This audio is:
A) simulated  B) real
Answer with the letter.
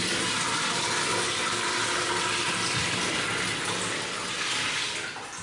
B